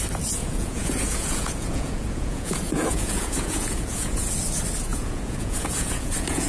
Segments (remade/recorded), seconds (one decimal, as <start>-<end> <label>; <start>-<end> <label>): 0.0-0.4 recorded; 0.4-4.3 remade; 4.3-4.9 recorded; 4.9-6.5 remade